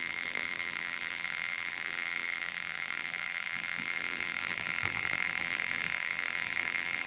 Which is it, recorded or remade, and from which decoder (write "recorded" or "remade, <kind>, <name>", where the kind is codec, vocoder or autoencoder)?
remade, vocoder, BigVGAN v2